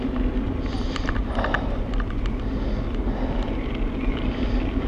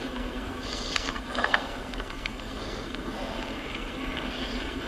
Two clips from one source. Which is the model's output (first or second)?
second